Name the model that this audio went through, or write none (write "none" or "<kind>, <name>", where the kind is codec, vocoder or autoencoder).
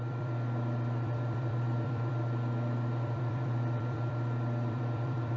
vocoder, BigVGAN v2